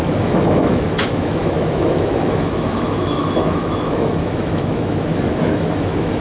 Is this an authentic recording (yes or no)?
no